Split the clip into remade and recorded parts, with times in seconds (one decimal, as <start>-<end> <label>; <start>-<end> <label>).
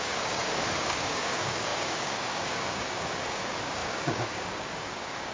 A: 0.0-5.3 remade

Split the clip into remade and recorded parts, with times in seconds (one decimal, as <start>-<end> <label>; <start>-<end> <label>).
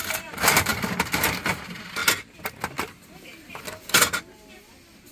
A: 0.0-5.1 recorded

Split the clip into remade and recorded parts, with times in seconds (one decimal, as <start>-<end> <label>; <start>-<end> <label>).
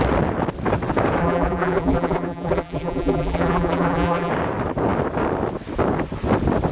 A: 0.0-1.2 recorded; 1.2-4.3 remade; 4.3-6.7 recorded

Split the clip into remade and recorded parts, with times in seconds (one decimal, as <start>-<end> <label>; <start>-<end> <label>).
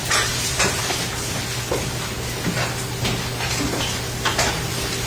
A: 0.0-0.8 remade; 0.8-5.1 recorded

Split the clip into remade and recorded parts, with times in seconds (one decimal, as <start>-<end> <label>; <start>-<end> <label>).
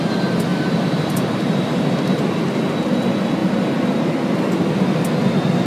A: 0.0-0.5 recorded; 0.5-2.2 remade; 2.2-5.7 recorded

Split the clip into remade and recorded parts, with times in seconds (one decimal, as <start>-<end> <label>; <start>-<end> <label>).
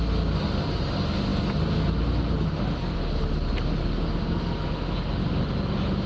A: 0.0-6.1 recorded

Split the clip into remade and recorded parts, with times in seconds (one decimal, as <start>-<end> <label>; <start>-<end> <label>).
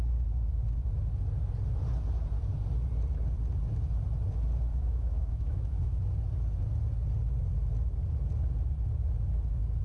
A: 0.0-4.7 recorded; 4.7-6.1 remade; 6.1-9.8 recorded